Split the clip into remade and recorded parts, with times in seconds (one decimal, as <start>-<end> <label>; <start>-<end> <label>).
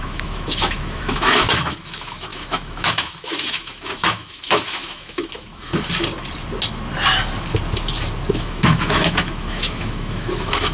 0.0-5.7 remade; 5.7-8.3 recorded; 8.3-10.7 remade